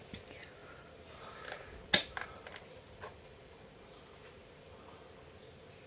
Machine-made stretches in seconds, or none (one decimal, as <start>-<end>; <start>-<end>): none